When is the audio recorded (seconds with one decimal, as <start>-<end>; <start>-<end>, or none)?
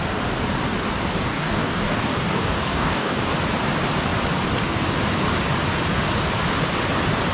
0.0-1.3; 3.3-7.3